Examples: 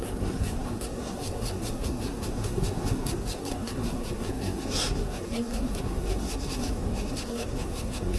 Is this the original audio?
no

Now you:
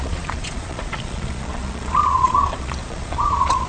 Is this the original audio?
no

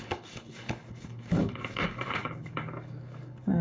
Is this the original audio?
no